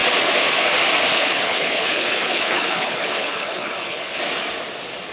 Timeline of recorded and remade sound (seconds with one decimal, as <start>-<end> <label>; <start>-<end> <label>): 0.0-1.1 recorded; 1.1-4.2 remade; 4.2-5.1 recorded